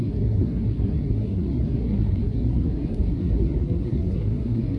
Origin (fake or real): fake